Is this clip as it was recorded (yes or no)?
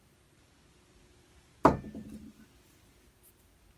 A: yes